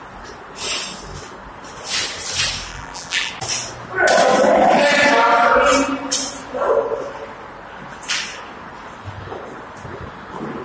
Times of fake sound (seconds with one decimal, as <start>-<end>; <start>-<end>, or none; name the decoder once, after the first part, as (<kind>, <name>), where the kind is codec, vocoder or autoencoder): 2.7-3.3 (vocoder, BigVGAN v2)